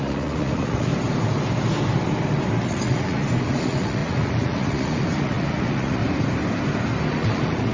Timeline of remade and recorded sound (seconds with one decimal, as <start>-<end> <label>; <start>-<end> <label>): 0.0-0.9 remade; 0.9-2.6 recorded; 2.6-6.0 remade; 6.0-7.1 recorded; 7.1-7.7 remade